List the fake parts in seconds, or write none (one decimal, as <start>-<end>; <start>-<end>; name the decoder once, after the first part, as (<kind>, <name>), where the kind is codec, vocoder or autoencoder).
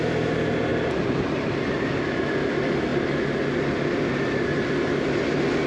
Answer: none